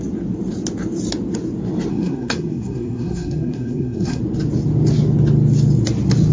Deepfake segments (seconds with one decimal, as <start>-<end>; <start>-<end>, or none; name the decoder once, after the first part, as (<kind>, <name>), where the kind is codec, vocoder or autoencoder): 1.9-4.2 (codec, SNAC)